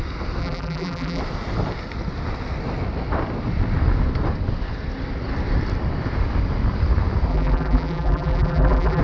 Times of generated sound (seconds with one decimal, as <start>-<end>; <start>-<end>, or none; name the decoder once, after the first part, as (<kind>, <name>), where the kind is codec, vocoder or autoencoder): 0.4-1.2 (vocoder, BigVGAN v2); 7.3-9.0